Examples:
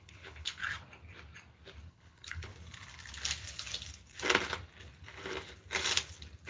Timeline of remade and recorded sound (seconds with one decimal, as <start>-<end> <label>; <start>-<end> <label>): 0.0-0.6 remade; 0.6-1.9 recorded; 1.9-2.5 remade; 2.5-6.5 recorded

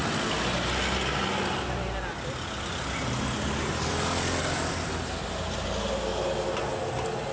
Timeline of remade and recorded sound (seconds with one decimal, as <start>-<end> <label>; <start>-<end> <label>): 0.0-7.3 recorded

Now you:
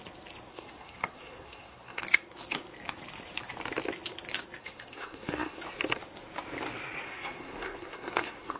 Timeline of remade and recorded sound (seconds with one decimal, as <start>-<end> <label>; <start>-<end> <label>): 0.0-0.5 recorded; 0.5-2.0 remade; 2.0-4.6 recorded; 4.6-5.6 remade; 5.6-7.0 recorded; 7.0-8.6 remade

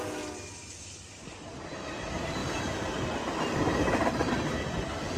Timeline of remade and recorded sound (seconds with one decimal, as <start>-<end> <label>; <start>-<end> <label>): 0.0-5.2 recorded